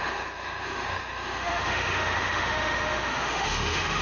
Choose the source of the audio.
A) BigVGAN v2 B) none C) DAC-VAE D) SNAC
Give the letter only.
C